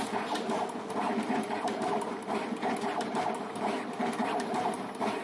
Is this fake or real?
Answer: real